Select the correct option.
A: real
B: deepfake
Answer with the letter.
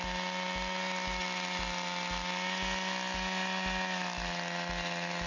A